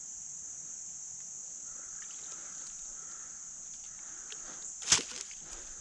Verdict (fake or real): real